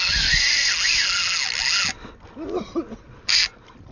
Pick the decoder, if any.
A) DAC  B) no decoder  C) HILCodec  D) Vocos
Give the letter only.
B